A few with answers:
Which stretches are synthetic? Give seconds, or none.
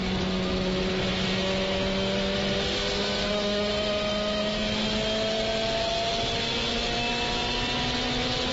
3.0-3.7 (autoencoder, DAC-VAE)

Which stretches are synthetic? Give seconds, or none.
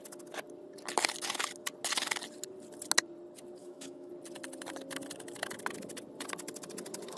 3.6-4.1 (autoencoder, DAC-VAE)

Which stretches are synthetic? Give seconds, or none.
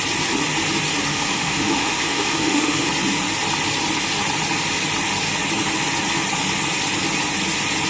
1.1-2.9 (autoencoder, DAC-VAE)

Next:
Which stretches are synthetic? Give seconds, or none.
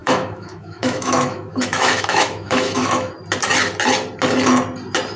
0.0-3.1 (autoencoder, DAC-VAE)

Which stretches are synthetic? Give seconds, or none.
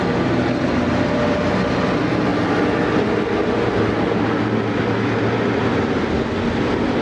none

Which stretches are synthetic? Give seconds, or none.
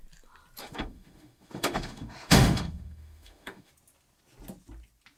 0.6-3.7 (autoencoder, DAC-VAE)